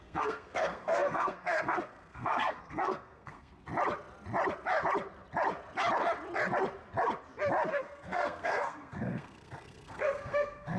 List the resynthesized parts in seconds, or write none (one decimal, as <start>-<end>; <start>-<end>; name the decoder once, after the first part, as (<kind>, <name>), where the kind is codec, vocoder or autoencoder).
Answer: 0.0-3.5 (codec, SNAC); 7.7-10.8